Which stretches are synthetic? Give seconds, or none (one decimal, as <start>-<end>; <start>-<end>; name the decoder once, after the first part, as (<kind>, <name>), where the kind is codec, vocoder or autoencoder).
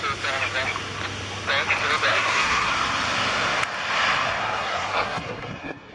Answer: 2.1-2.7 (codec, SNAC); 4.4-5.9